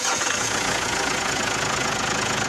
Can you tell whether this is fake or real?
fake